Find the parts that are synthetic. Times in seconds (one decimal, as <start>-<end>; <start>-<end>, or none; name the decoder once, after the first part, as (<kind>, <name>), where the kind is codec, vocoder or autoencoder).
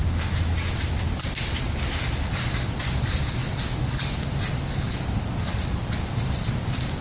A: none